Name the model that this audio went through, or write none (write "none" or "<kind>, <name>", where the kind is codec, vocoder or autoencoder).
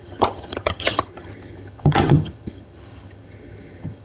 vocoder, HiFi-GAN